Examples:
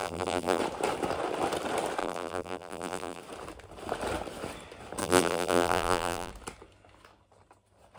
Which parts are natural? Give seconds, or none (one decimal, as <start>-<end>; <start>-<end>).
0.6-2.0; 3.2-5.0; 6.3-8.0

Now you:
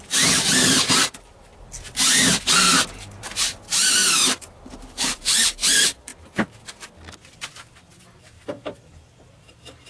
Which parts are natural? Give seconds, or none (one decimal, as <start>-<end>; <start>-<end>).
1.5-2.4; 6.1-8.2

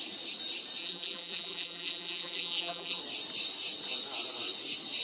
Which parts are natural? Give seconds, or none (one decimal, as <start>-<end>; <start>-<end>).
0.0-0.8; 3.0-5.0

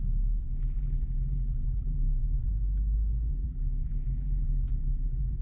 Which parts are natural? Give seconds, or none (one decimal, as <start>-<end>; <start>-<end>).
0.0-0.4; 2.5-3.3

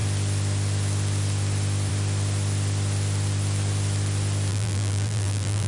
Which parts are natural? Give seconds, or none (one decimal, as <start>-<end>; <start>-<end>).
0.0-4.5

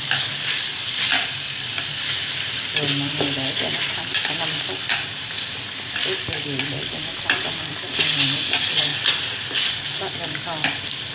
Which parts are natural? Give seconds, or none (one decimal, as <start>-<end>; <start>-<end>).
8.9-9.7

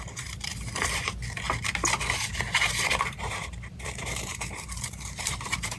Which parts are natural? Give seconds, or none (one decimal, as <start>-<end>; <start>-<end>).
0.5-3.0